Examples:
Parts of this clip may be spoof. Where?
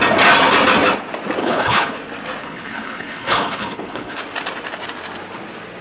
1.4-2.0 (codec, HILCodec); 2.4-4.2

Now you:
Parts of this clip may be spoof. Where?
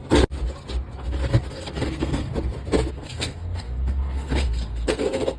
1.5-2.3 (codec, SNAC); 2.9-5.4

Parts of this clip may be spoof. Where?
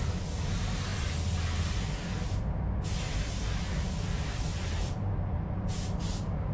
none